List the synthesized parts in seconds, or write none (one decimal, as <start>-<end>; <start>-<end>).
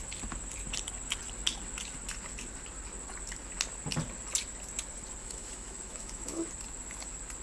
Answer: 5.2-6.5